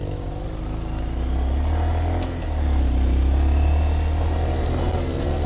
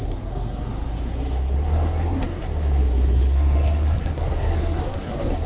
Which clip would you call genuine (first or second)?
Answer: first